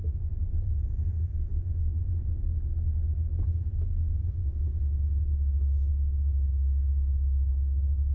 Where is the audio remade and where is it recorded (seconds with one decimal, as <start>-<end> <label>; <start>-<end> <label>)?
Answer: 0.0-0.4 remade; 0.4-1.1 recorded; 1.1-2.1 remade; 2.1-4.8 recorded; 4.8-8.1 remade